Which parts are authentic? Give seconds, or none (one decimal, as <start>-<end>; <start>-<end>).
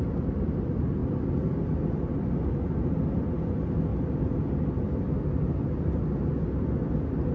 0.0-3.9; 4.5-7.3